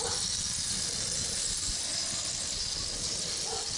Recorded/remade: recorded